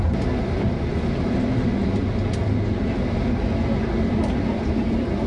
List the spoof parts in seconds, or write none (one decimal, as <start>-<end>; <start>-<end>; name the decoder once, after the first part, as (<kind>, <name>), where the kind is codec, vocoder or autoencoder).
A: 0.0-0.9 (vocoder, BigVGAN v2); 4.1-5.3